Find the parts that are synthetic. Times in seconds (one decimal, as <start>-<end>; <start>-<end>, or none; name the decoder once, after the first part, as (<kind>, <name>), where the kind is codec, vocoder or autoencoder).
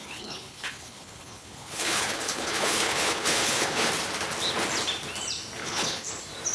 0.0-3.9 (codec, HILCodec); 5.6-6.1